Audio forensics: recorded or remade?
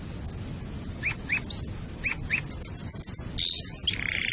recorded